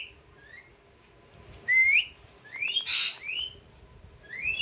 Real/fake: real